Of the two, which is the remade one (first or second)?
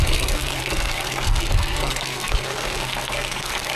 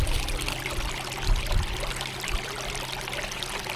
first